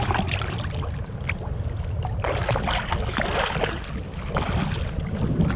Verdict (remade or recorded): recorded